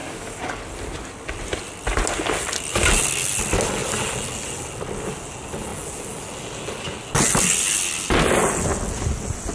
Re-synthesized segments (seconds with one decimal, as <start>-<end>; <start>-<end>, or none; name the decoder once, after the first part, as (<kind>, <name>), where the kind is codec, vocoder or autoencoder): 0.0-0.6 (codec, DAC)